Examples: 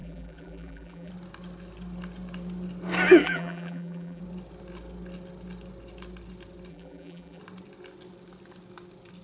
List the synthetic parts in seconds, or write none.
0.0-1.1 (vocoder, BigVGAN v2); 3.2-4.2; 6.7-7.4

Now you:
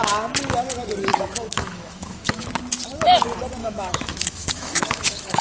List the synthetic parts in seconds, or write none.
1.1-2.5 (autoencoder, DAC-VAE); 3.6-5.4

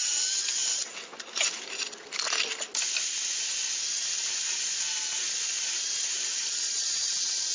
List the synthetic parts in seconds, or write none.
6.4-7.1 (vocoder, Vocos)

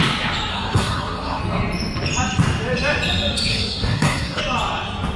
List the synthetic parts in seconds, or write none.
0.5-1.4 (codec, SNAC); 3.5-4.4

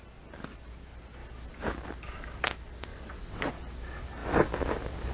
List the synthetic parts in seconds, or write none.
2.9-3.5 (vocoder, WaveNeXt)

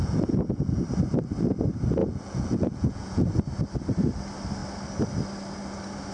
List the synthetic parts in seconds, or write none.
0.0-0.8 (vocoder, Vocos); 2.0-3.3